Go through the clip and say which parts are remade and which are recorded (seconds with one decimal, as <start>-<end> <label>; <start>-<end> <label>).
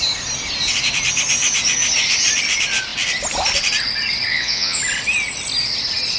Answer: 0.0-4.3 recorded; 4.3-4.8 remade; 4.8-6.2 recorded